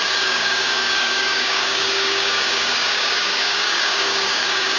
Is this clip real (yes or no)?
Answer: no